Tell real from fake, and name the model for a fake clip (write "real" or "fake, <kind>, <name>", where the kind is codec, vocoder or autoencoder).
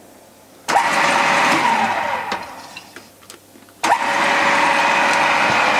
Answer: real